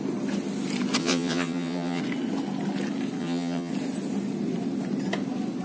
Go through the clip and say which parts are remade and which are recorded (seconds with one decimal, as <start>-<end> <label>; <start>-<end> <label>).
0.0-1.0 recorded; 1.0-2.0 remade; 2.0-3.2 recorded; 3.2-3.7 remade; 3.7-5.6 recorded